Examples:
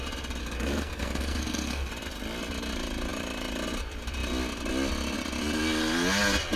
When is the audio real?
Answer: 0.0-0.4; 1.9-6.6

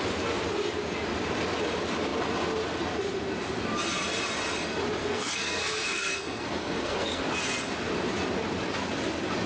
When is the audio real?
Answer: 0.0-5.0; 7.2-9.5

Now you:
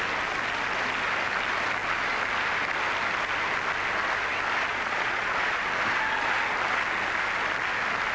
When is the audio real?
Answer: 0.0-4.7; 5.6-8.1